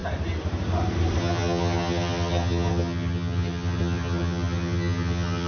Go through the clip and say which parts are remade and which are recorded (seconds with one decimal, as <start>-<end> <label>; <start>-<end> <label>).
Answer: 0.0-1.2 recorded; 1.2-5.5 remade